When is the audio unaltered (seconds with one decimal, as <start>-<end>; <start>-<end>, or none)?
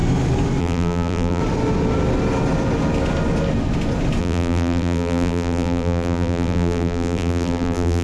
0.0-0.6; 1.4-4.2